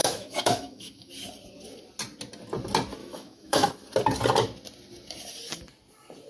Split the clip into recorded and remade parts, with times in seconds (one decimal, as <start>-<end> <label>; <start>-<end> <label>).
0.0-1.1 remade; 1.1-3.0 recorded; 3.0-3.7 remade; 3.7-6.3 recorded